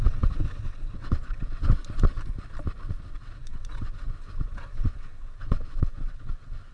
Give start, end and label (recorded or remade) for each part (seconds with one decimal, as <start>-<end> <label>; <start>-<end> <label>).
0.0-1.8 remade; 1.8-3.1 recorded; 3.1-6.7 remade